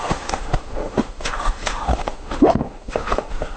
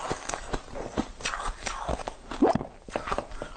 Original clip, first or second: second